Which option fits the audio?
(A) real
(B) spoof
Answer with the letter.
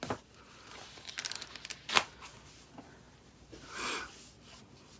A